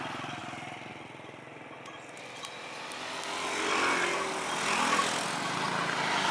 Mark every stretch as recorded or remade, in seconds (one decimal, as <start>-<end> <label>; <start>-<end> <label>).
0.0-6.3 recorded